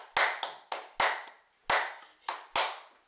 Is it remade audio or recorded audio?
recorded